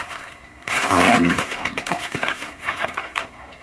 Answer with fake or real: fake